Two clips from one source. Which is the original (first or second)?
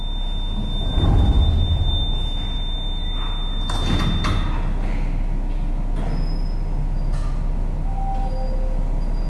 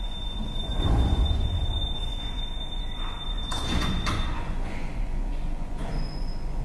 first